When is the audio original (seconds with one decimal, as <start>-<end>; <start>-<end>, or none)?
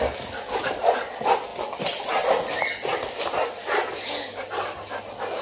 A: 0.0-5.4